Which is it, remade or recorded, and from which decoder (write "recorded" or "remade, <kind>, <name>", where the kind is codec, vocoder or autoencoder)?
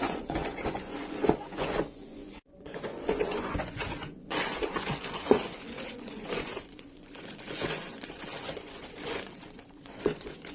remade, vocoder, Vocos